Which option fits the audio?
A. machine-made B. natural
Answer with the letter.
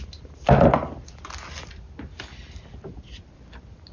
B